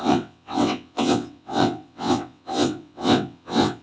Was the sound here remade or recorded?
remade